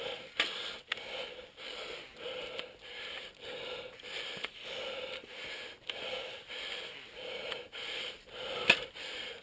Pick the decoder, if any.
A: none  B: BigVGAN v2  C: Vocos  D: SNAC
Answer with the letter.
A